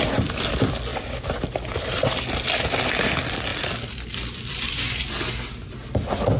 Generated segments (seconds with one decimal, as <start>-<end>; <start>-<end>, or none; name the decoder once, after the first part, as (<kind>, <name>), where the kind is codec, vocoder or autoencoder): 0.9-2.6 (vocoder, BigVGAN v2); 3.5-5.1